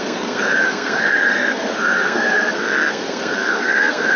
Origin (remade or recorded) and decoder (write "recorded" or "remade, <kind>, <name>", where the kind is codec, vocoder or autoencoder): remade, codec, SNAC